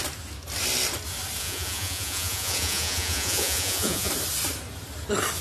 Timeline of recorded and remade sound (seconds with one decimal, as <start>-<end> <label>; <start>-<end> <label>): 0.0-1.4 recorded; 1.4-4.1 remade; 4.1-5.4 recorded